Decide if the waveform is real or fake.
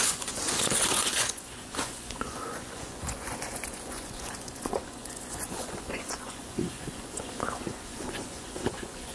fake